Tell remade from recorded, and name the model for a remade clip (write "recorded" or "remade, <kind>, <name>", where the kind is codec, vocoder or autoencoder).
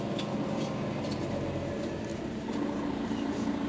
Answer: recorded